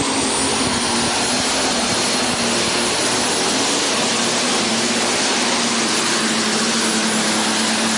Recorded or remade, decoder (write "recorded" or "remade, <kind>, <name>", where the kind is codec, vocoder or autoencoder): recorded